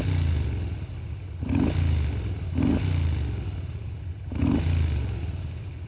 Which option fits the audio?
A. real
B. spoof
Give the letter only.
A